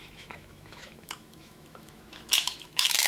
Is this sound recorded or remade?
remade